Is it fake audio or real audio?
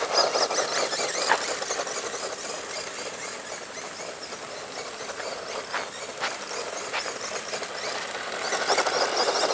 real